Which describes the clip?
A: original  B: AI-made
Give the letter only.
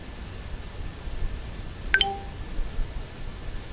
A